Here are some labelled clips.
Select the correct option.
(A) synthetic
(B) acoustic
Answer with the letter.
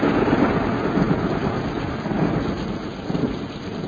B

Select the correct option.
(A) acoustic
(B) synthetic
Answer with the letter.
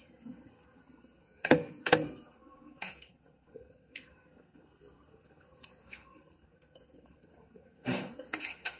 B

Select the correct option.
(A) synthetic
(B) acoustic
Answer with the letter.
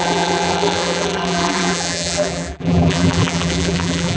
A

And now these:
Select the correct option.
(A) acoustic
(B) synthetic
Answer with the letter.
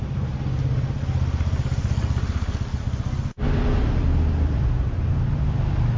A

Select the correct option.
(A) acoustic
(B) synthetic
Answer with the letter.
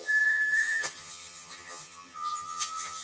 B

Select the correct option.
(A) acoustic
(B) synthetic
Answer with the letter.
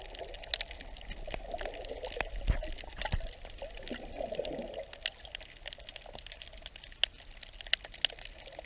A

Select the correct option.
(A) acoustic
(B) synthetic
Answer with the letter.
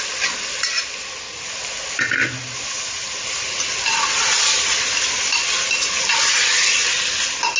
A